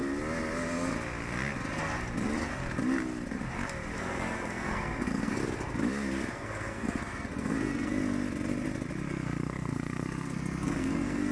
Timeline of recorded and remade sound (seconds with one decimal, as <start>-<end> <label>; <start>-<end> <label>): 0.0-4.0 recorded; 4.0-5.4 remade; 5.4-6.3 recorded; 6.3-8.0 remade; 8.0-9.1 recorded; 9.1-11.3 remade